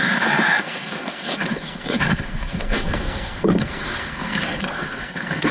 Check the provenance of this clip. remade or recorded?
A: remade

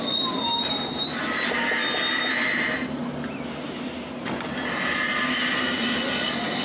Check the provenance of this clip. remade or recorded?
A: recorded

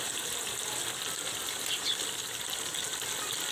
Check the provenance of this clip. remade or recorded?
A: recorded